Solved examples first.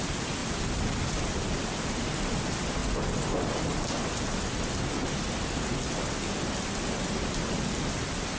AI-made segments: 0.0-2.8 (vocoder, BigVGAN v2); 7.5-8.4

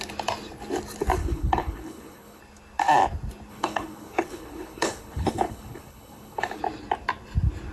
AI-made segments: 1.2-2.4 (codec, HILCodec); 3.5-6.6

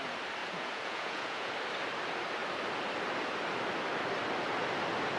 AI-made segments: 0.4-1.5 (vocoder, Vocos)

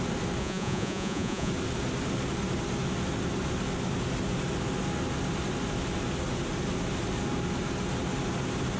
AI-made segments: 0.4-1.5 (vocoder, Vocos)